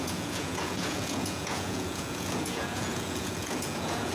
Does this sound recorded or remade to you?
remade